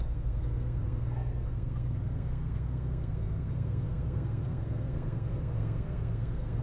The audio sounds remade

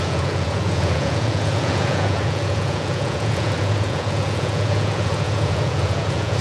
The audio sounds remade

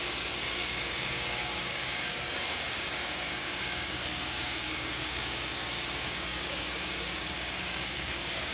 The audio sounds remade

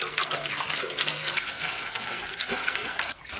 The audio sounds remade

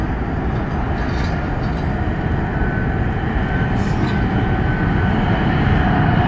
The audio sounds recorded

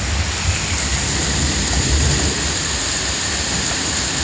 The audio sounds recorded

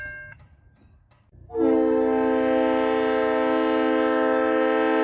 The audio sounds recorded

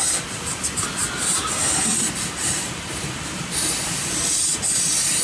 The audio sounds recorded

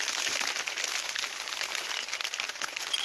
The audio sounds recorded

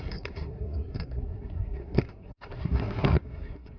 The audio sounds remade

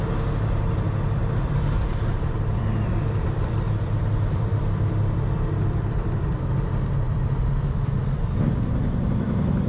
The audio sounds remade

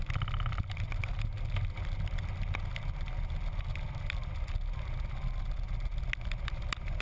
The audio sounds recorded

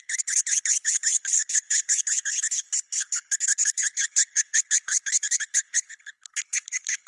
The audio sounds remade